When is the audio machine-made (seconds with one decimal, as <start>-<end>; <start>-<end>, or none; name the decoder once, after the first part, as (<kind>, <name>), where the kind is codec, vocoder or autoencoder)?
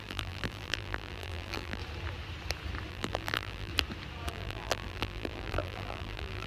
0.0-1.8 (vocoder, BigVGAN v2); 2.9-3.7; 4.3-6.5